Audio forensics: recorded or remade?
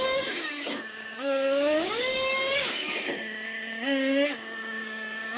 remade